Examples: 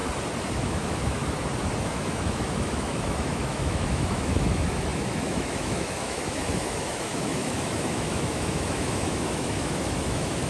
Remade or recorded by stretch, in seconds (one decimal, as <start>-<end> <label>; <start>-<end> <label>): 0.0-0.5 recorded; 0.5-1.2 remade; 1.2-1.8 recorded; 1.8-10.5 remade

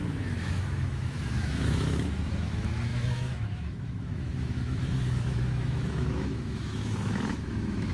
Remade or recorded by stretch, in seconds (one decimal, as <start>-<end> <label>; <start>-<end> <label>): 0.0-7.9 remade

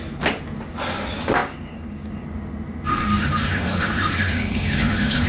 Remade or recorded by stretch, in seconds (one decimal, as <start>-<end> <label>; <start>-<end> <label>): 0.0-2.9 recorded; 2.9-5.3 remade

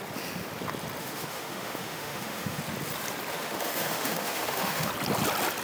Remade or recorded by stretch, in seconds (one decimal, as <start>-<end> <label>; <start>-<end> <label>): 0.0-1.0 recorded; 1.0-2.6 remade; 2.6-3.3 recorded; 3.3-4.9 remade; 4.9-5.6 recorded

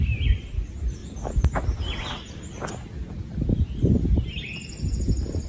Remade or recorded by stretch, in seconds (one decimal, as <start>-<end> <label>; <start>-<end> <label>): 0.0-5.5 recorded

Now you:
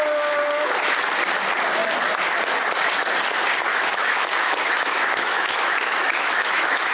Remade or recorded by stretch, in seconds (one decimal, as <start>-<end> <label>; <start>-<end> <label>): 0.0-3.7 recorded; 3.7-6.9 remade

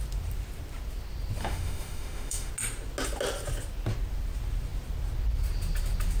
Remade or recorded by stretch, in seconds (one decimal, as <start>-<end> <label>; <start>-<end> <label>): 0.0-1.4 recorded; 1.4-2.5 remade; 2.5-6.2 recorded

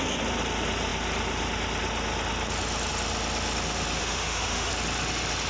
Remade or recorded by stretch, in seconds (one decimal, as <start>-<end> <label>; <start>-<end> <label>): 0.0-4.0 recorded; 4.0-4.7 remade; 4.7-5.5 recorded